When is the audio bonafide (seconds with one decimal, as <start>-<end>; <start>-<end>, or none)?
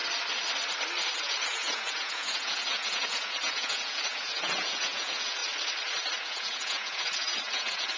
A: 0.0-1.2; 5.4-6.3